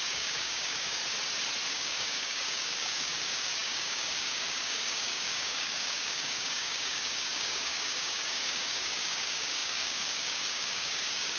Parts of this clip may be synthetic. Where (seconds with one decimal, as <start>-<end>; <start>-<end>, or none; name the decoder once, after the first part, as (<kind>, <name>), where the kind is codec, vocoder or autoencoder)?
0.0-1.0 (codec, DAC); 1.7-11.4